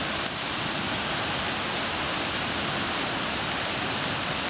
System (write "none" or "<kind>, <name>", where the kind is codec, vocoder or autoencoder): none